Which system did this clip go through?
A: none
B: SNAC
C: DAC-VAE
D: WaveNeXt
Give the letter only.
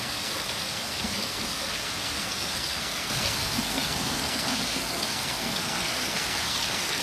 B